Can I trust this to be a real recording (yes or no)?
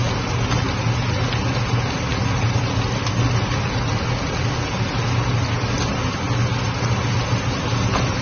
yes